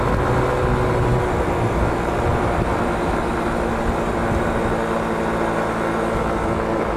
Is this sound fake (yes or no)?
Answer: no